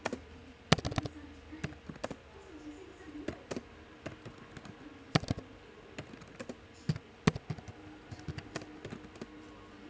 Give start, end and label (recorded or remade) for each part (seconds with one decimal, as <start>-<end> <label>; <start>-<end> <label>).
0.0-9.9 recorded